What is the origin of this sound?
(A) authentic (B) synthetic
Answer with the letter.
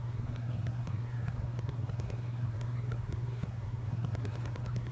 B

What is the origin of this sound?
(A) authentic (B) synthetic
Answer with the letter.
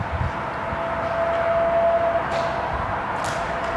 A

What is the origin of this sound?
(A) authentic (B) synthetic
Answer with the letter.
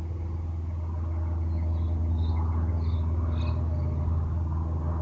A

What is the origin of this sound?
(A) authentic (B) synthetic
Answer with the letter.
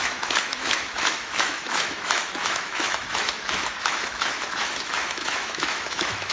B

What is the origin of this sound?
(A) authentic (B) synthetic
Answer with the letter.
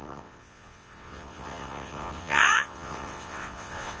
B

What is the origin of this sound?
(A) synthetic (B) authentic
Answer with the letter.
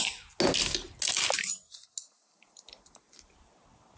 B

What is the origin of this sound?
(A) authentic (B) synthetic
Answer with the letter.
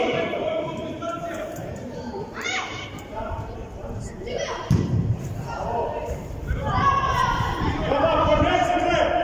B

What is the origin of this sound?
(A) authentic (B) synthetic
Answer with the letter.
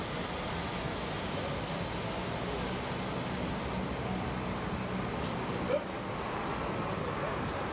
A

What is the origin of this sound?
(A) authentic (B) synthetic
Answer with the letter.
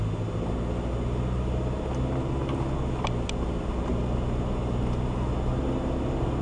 A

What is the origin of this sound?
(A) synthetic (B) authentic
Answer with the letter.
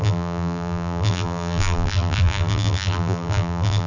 A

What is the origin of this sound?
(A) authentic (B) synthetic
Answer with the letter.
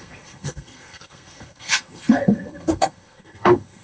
B